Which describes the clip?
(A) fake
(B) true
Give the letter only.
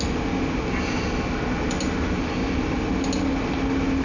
B